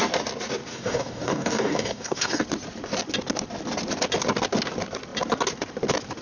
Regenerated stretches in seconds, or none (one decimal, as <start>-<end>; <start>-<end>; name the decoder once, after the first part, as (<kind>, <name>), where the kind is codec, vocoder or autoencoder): 0.7-2.4 (codec, DAC)